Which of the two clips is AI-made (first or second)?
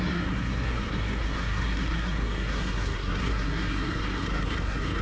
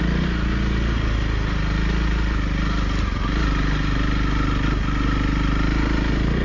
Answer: first